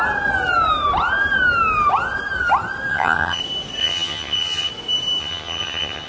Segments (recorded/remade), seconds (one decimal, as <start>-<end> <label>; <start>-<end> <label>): 0.0-2.9 recorded; 2.9-3.4 remade; 3.4-3.8 recorded; 3.8-4.7 remade; 4.7-5.2 recorded; 5.2-6.1 remade